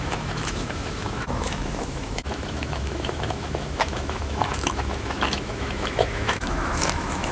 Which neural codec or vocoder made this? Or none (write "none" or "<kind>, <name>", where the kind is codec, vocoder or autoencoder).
autoencoder, DAC-VAE